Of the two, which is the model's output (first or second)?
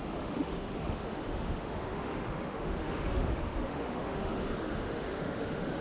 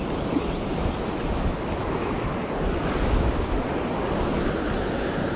first